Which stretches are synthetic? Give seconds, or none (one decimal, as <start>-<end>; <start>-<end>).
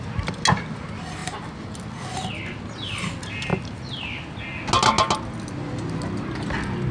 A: none